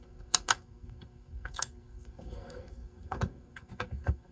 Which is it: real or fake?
fake